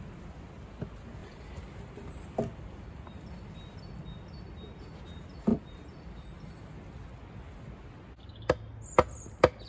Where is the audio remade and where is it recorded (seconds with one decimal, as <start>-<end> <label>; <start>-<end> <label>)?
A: 0.0-1.2 recorded; 1.2-4.8 remade; 4.8-5.5 recorded; 5.5-6.6 remade; 6.6-9.7 recorded